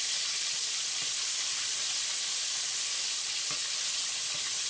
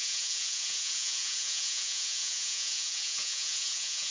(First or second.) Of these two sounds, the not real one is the second